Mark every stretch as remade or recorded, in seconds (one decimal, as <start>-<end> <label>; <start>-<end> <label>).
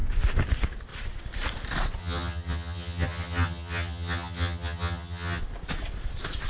0.0-2.0 recorded; 2.0-5.4 remade; 5.4-6.5 recorded